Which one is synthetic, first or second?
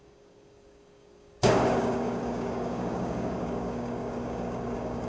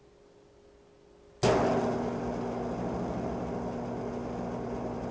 first